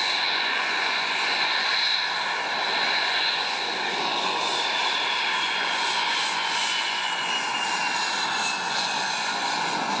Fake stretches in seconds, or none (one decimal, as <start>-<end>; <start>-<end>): 0.0-1.7; 2.8-4.5; 5.4-7.5; 8.3-10.0